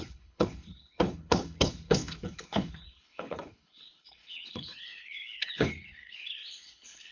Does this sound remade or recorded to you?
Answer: remade